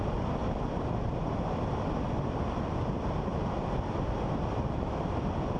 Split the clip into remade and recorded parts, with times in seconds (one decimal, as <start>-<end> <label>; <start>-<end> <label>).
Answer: 0.0-5.6 recorded